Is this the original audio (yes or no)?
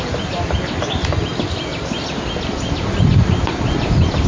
yes